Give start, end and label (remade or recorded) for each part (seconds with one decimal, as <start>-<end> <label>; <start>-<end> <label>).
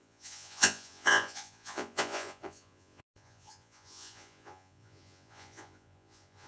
0.0-6.5 remade